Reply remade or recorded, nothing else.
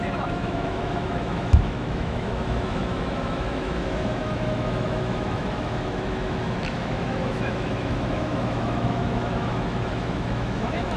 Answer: remade